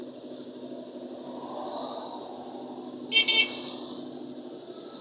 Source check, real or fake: real